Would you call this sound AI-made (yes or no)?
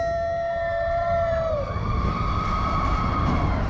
no